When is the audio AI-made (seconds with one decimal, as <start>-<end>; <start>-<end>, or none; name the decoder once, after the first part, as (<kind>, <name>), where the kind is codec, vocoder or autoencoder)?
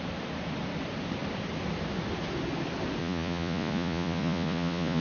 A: 3.0-5.0 (vocoder, Vocos)